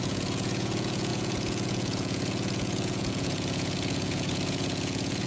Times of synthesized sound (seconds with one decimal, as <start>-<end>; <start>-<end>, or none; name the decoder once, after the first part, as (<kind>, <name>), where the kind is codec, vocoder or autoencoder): 0.0-5.3 (vocoder, Vocos)